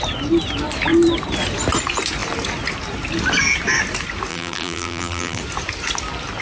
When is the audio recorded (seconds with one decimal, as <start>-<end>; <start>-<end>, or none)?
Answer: 0.0-4.3; 5.4-6.4

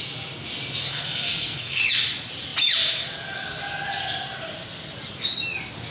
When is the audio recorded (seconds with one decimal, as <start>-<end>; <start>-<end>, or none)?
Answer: 0.0-0.9; 1.8-5.9